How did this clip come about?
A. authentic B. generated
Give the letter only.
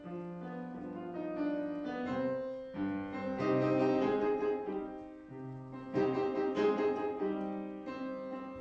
A